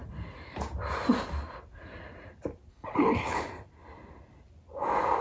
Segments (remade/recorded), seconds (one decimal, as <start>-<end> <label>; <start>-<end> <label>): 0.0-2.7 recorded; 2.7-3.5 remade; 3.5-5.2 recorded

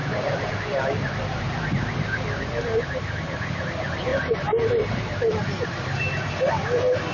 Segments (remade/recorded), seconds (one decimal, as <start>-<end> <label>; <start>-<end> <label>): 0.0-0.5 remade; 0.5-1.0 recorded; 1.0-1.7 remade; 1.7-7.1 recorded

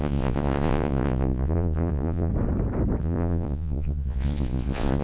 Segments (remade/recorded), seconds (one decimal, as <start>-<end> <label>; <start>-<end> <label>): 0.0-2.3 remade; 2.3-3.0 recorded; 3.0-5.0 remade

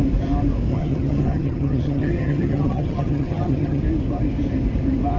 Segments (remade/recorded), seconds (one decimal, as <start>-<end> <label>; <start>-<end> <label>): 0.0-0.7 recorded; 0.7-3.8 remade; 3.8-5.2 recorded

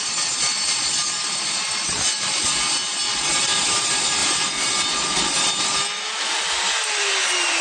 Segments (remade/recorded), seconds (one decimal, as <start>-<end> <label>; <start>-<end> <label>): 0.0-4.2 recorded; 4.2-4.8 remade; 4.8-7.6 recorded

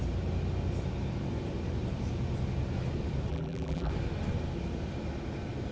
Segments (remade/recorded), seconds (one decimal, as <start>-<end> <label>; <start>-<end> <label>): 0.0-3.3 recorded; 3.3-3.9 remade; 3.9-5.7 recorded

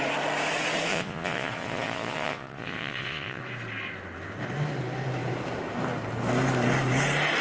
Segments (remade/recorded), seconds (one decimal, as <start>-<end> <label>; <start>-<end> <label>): 0.0-0.9 recorded; 0.9-3.4 remade; 3.4-7.4 recorded

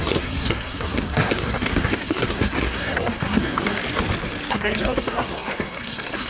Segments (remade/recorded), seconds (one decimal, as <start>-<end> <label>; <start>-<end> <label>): 0.0-3.8 remade; 3.8-4.5 recorded; 4.5-6.3 remade